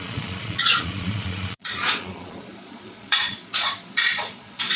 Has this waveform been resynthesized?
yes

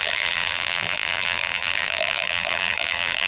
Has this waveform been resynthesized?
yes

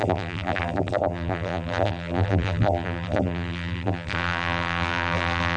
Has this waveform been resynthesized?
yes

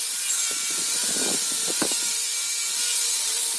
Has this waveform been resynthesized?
no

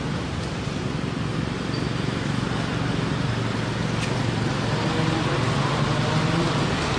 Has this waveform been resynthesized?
no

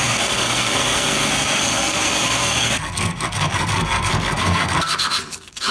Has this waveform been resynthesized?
yes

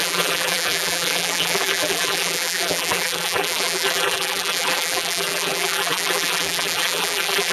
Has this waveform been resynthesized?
yes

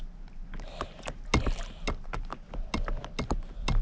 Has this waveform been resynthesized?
no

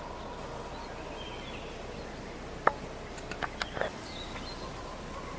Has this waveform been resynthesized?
no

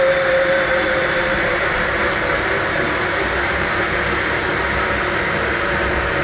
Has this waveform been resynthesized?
yes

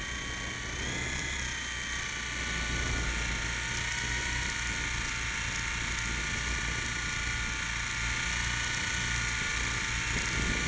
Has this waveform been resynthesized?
no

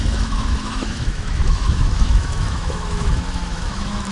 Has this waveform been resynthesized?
yes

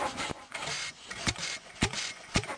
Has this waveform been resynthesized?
yes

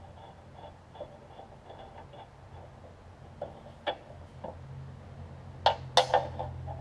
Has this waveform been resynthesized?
no